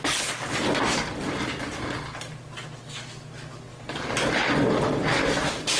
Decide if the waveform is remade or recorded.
recorded